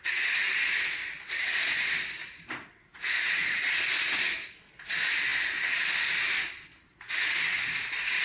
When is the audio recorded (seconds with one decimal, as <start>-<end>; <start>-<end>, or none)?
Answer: 0.0-2.2; 3.9-8.2